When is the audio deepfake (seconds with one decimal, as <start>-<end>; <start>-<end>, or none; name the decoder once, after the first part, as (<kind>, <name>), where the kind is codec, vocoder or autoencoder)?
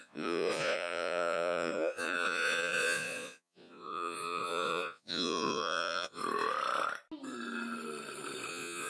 0.0-6.2 (vocoder, Vocos); 8.5-8.9